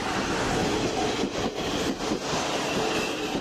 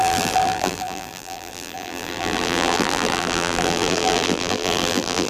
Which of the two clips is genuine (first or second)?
first